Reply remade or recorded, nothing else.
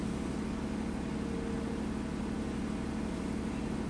recorded